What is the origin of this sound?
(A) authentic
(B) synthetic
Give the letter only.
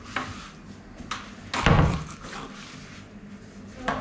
A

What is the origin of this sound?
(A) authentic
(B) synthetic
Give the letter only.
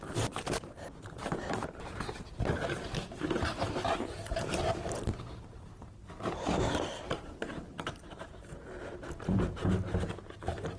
B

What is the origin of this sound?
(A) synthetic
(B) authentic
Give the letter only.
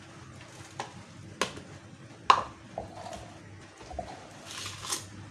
B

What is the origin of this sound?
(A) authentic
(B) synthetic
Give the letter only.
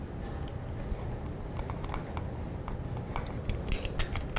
A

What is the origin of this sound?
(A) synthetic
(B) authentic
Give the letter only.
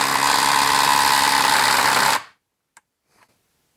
B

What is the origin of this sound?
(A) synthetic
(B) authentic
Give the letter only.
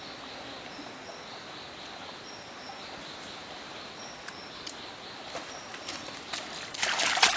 B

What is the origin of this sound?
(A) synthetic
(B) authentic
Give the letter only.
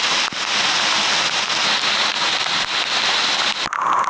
B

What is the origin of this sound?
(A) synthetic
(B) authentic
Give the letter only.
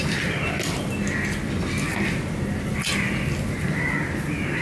B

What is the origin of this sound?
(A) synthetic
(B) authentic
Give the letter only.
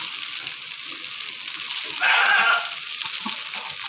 B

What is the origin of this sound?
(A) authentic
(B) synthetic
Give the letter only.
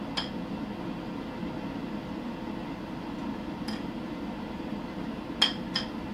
A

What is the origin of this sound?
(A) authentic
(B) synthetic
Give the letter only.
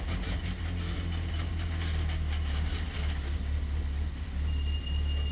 A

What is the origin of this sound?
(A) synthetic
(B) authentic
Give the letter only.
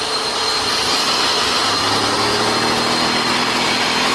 B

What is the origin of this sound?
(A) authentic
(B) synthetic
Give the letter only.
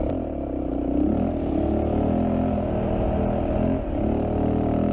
A